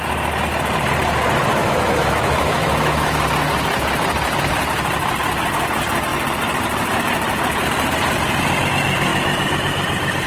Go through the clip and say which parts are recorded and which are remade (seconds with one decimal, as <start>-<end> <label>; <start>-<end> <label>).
0.0-1.6 recorded; 1.6-3.2 remade; 3.2-10.3 recorded